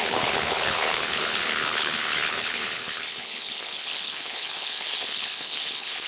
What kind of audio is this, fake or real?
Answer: fake